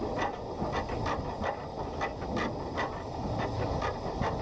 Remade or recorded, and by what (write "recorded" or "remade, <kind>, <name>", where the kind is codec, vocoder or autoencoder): recorded